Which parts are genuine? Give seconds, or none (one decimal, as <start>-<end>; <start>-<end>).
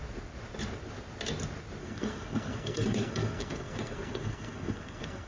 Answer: 0.0-1.8